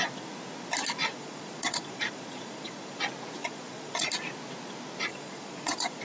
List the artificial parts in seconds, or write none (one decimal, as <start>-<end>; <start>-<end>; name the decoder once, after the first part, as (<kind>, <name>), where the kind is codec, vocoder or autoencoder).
1.0-3.0 (vocoder, Vocos); 3.4-4.1; 5.1-6.0